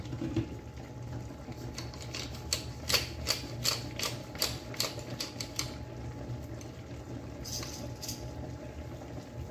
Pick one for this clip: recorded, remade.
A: recorded